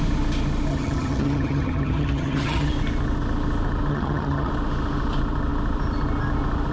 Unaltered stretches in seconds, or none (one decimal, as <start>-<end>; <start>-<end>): 0.0-0.7; 2.7-3.9; 4.5-6.7